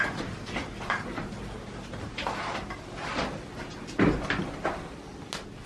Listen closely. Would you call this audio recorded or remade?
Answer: recorded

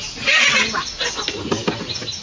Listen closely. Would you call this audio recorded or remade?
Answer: recorded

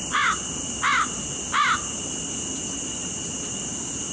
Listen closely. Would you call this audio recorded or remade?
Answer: recorded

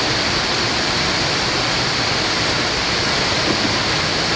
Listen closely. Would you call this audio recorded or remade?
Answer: recorded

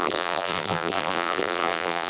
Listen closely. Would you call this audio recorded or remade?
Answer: remade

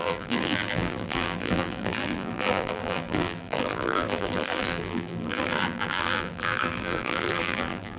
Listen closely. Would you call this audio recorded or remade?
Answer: remade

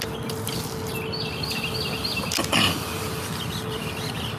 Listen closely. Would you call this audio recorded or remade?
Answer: recorded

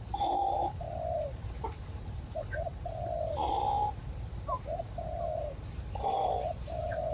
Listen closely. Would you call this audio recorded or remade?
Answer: remade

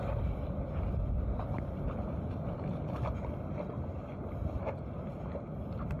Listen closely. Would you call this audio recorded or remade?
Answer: recorded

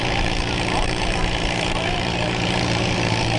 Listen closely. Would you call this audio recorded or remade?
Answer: remade